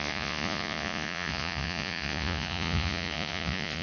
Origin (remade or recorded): remade